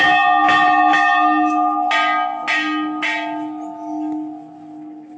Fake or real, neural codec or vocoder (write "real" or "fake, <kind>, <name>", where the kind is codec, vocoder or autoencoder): real